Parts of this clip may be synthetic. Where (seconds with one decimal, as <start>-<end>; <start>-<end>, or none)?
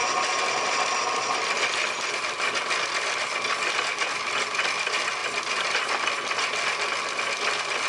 1.2-5.2; 7.0-7.9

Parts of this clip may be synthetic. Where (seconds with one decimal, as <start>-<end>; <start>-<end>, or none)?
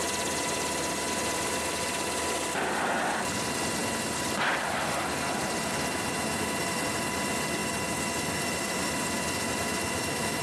none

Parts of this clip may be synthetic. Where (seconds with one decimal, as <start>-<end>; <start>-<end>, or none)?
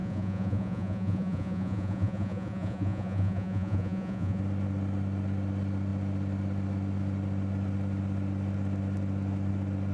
0.0-4.4